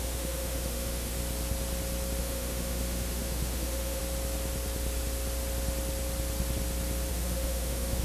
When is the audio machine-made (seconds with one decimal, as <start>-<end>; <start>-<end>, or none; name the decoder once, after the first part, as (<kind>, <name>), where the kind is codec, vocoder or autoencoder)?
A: 0.0-1.2 (autoencoder, DAC-VAE); 2.2-4.0; 7.1-8.0